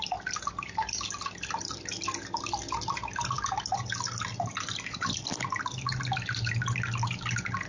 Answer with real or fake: real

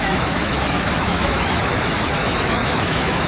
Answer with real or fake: fake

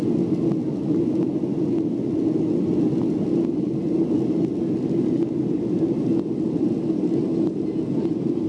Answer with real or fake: real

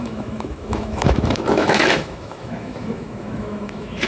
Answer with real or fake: fake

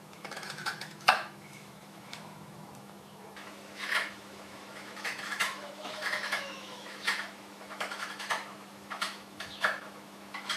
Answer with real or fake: fake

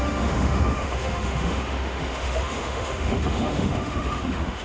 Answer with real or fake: fake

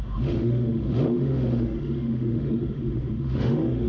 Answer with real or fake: fake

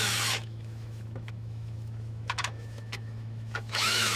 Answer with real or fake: fake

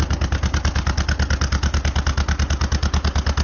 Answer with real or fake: real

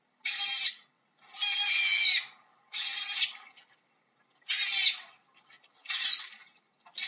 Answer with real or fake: real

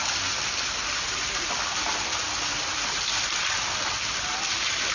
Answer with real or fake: real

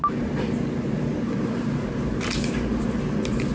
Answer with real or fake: real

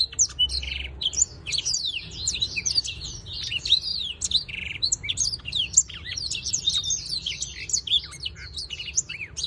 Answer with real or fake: real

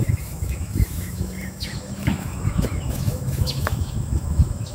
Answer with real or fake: fake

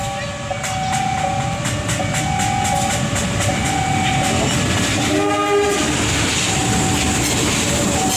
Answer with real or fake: real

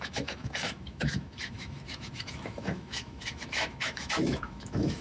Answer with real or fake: fake